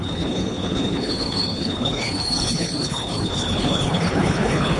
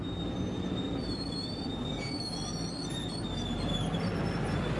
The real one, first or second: second